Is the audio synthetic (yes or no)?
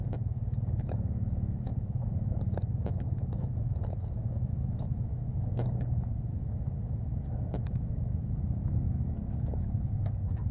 yes